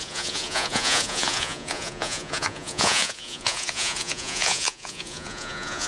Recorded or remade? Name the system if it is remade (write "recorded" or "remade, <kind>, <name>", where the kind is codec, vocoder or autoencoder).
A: remade, vocoder, Vocos